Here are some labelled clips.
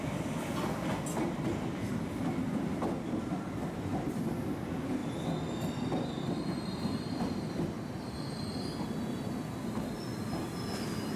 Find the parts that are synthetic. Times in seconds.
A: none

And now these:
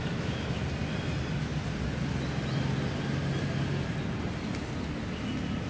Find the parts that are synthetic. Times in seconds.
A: 0.0-0.6 (autoencoder, DAC-VAE)

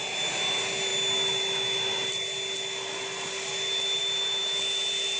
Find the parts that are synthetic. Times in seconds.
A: none

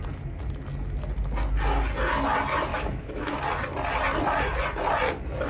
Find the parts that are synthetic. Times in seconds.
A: 2.7-3.4 (autoencoder, DAC-VAE)

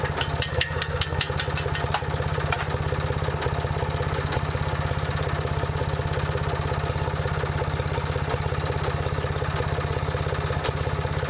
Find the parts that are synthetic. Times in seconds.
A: 0.5-1.2 (codec, SNAC)

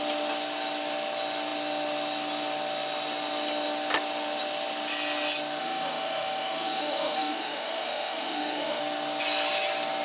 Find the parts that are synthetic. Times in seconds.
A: 5.6-8.8 (autoencoder, DAC-VAE)

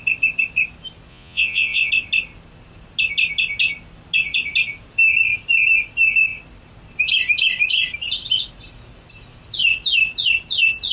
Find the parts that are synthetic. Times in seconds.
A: 1.1-1.9 (vocoder, Vocos)